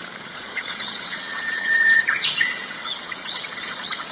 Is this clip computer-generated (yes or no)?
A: yes